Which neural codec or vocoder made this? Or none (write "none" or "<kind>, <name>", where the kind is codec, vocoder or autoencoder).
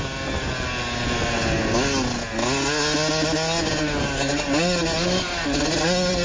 none